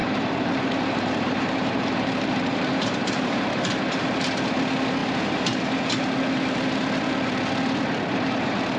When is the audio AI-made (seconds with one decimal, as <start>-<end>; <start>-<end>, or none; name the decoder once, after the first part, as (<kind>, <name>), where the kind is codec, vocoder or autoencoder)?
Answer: 0.0-3.8 (vocoder, BigVGAN v2)